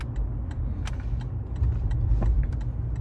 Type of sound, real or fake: real